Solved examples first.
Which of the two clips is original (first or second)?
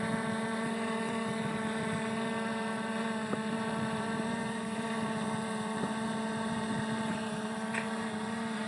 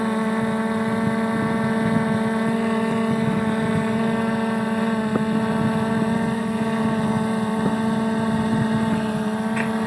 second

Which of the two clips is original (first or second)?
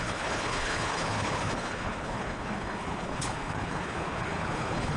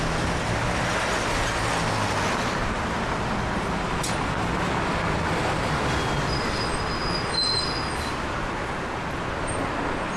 second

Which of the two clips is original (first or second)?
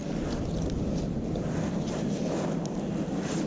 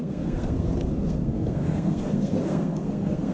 first